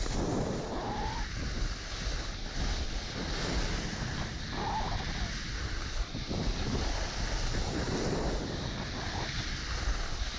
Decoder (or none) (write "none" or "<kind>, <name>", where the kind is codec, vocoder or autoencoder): none